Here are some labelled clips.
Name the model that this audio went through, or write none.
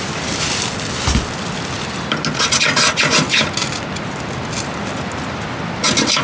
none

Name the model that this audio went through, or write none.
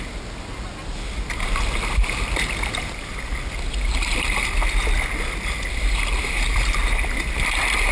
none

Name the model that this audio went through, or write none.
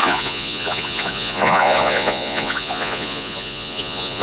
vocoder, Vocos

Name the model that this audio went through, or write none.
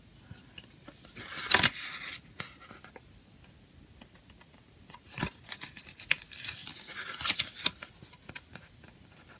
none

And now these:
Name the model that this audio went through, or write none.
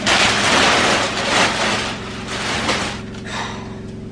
none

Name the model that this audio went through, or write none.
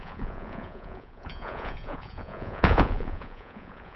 vocoder, Vocos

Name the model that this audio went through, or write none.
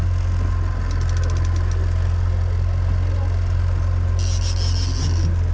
none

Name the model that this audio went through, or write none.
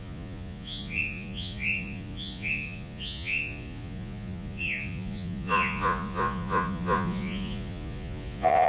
vocoder, Vocos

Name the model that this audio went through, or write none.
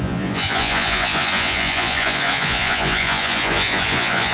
vocoder, Vocos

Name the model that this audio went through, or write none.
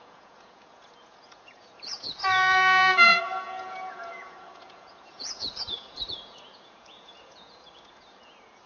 vocoder, Vocos